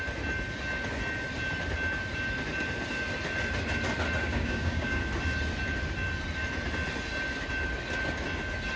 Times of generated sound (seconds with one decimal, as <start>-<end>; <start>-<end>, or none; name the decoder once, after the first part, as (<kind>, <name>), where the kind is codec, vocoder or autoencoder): 4.2-5.0 (codec, DAC)